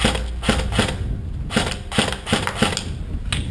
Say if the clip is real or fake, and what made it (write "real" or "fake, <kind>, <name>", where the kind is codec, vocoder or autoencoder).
real